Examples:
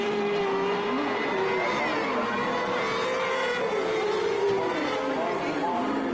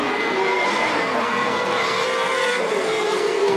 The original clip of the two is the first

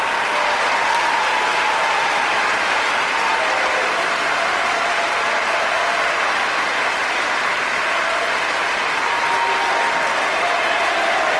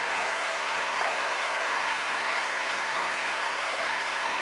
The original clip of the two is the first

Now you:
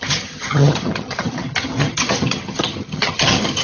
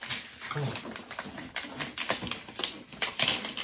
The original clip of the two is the second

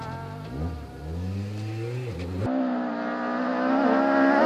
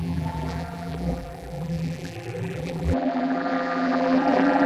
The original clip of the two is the first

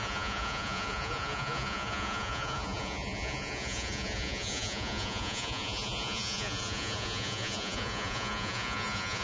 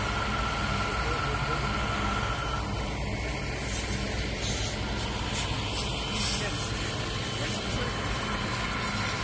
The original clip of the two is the second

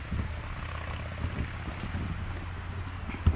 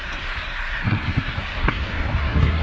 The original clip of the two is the first